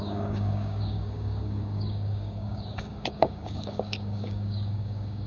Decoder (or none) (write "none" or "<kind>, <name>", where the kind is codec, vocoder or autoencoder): codec, DAC